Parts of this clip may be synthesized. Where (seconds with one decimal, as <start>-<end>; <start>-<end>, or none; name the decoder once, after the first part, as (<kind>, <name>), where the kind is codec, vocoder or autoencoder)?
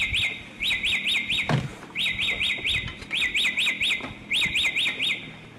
1.7-2.5 (vocoder, BigVGAN v2)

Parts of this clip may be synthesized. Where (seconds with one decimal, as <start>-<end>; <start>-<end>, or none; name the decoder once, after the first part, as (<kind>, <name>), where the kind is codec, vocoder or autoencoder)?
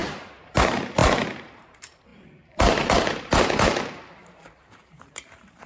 0.0-5.7 (vocoder, BigVGAN v2)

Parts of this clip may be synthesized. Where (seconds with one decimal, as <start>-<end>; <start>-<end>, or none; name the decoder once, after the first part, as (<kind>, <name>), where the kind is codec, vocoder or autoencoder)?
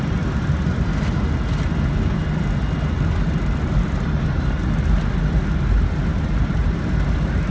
6.1-6.8 (vocoder, BigVGAN v2)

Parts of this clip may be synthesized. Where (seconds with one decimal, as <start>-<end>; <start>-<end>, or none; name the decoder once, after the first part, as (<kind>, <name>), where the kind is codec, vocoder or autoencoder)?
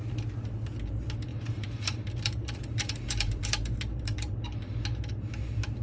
1.3-4.8 (vocoder, BigVGAN v2)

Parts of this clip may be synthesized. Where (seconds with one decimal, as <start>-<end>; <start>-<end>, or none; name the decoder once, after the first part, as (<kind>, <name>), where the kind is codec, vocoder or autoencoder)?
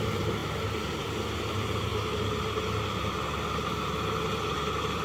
0.0-0.4 (vocoder, BigVGAN v2); 1.0-1.9; 4.5-5.0